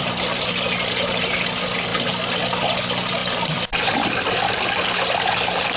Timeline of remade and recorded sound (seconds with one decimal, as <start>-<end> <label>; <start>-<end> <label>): 0.0-5.8 recorded